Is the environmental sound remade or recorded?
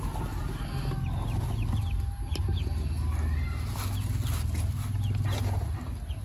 recorded